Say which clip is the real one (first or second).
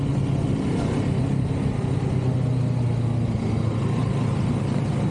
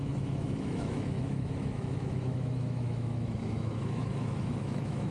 first